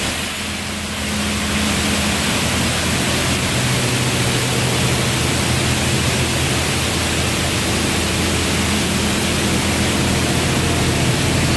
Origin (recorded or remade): recorded